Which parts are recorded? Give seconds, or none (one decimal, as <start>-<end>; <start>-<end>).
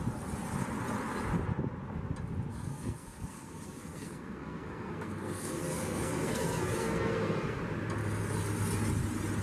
0.0-2.5; 7.6-9.4